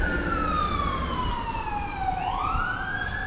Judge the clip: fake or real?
real